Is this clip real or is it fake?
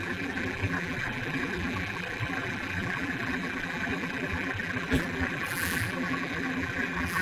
fake